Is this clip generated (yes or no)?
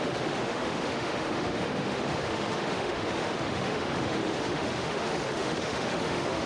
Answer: yes